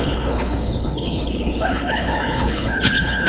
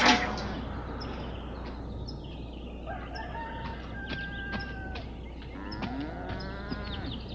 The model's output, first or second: first